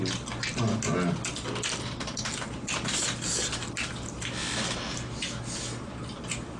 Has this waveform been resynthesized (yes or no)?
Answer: no